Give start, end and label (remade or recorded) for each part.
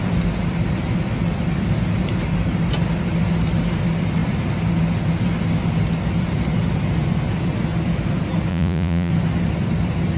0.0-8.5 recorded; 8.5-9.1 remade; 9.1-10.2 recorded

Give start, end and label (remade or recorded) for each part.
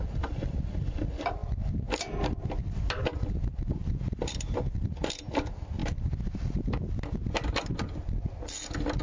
0.0-9.0 recorded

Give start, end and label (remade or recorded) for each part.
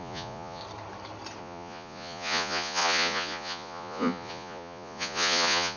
0.0-0.6 remade; 0.6-1.4 recorded; 1.4-5.8 remade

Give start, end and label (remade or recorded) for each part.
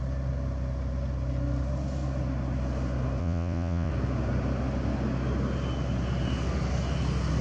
0.0-3.2 recorded; 3.2-3.9 remade; 3.9-7.4 recorded